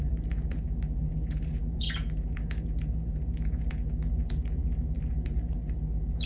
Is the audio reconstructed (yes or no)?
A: yes